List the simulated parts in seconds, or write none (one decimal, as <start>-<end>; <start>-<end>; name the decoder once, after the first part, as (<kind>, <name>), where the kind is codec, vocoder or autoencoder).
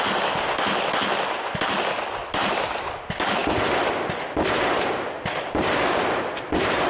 2.2-3.0 (vocoder, BigVGAN v2)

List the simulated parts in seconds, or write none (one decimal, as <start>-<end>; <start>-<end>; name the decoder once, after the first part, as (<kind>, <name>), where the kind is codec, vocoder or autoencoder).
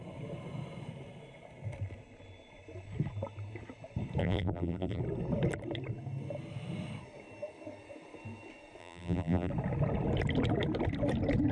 4.2-5.0 (vocoder, BigVGAN v2); 8.8-9.5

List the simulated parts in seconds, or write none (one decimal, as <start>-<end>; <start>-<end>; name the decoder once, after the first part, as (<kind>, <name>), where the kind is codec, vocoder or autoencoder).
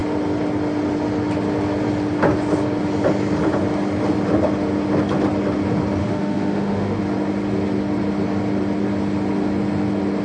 6.0-7.0 (autoencoder, DAC-VAE)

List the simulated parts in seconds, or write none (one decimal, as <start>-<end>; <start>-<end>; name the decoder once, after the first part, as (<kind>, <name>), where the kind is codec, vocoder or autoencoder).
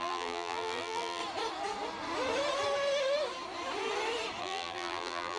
0.0-1.2 (vocoder, BigVGAN v2); 4.4-5.4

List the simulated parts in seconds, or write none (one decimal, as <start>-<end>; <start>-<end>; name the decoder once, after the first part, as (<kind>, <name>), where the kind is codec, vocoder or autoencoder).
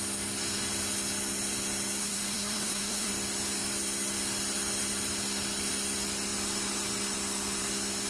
2.0-3.1 (codec, SNAC)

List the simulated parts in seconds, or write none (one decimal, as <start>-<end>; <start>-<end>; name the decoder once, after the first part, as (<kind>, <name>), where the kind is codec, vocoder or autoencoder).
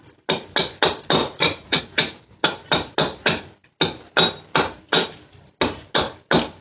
1.2-1.8 (vocoder, Vocos)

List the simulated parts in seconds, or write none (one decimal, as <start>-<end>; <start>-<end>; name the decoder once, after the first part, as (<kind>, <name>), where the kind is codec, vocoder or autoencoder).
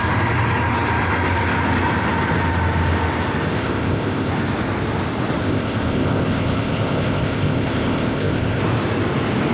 3.5-4.3 (codec, ZipCodec); 5.4-8.6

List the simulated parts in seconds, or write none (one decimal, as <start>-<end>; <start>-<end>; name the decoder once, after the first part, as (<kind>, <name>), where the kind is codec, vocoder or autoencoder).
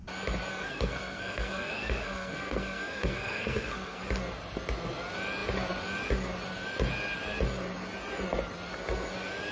0.5-4.0 (codec, SNAC)